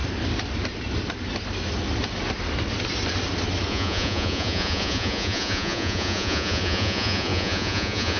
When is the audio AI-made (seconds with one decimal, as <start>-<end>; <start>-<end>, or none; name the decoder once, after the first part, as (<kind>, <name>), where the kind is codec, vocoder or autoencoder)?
3.7-8.2 (vocoder, Vocos)